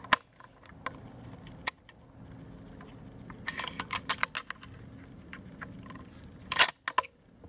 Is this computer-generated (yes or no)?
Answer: no